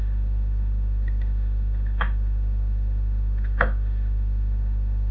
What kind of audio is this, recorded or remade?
remade